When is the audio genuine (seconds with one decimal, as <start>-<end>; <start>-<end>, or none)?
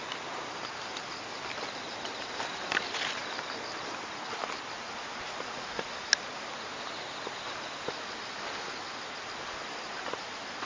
0.0-10.6